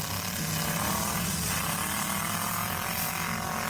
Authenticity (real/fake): real